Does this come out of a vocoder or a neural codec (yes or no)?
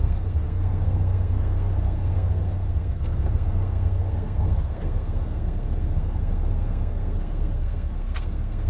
yes